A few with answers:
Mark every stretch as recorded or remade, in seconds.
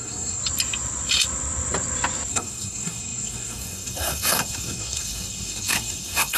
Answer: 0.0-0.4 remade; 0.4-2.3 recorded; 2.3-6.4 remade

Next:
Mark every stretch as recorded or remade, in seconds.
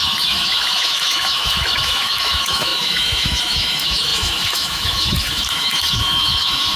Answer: 0.0-6.8 remade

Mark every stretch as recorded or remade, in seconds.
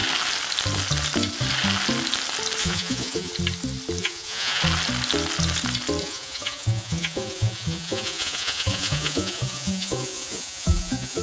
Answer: 0.0-2.6 recorded; 2.6-3.3 remade; 3.3-4.0 recorded; 4.0-4.6 remade; 4.6-6.0 recorded; 6.0-11.2 remade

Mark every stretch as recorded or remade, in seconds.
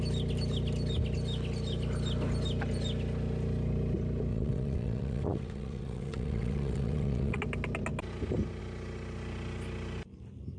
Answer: 0.0-4.3 recorded; 4.3-7.4 remade; 7.4-10.6 recorded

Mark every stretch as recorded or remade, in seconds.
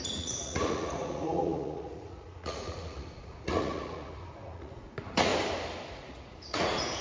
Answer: 0.0-5.3 remade; 5.3-5.9 recorded; 5.9-7.0 remade